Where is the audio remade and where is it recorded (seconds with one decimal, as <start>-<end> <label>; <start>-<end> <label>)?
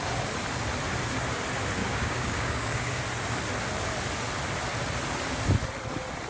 0.0-1.8 recorded; 1.8-3.0 remade; 3.0-6.3 recorded